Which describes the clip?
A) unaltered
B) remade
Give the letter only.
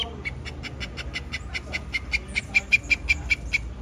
A